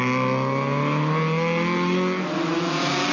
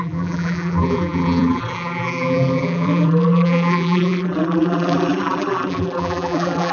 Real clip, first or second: first